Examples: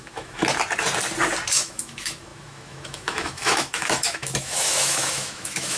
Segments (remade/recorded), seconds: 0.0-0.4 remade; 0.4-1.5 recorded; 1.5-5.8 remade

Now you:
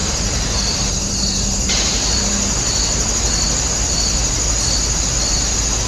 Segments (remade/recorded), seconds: 0.0-2.2 remade; 2.2-5.9 recorded

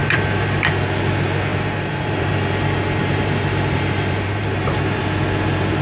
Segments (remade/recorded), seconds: 0.0-0.7 remade; 0.7-1.5 recorded; 1.5-2.3 remade; 2.3-3.0 recorded; 3.0-5.0 remade; 5.0-5.8 recorded